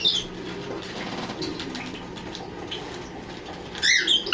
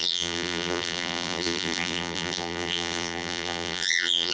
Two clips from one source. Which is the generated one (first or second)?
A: second